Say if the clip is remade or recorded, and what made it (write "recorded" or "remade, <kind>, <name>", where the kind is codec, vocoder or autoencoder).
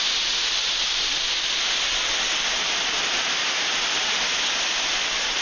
recorded